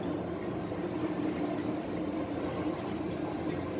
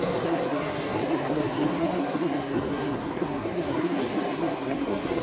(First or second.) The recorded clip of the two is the first